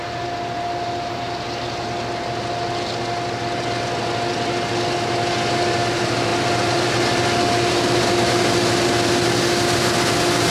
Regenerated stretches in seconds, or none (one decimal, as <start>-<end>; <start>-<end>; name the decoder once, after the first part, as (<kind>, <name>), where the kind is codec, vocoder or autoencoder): none